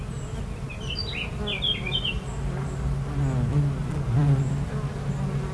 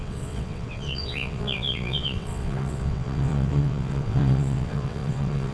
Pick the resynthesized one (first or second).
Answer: second